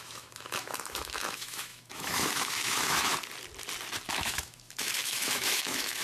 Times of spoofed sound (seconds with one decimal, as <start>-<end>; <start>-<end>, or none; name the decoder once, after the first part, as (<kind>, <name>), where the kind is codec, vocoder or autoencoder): 0.0-3.1 (autoencoder, DAC-VAE); 4.1-6.0